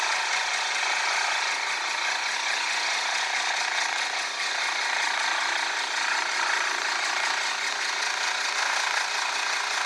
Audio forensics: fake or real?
fake